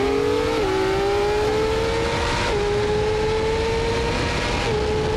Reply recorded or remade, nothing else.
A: recorded